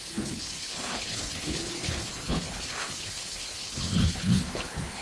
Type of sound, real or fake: fake